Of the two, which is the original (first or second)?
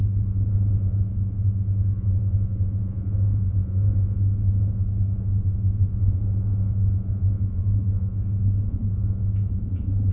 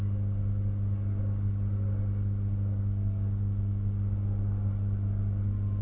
second